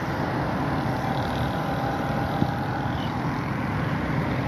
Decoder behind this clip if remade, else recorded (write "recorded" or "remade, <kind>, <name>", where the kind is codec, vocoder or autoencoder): recorded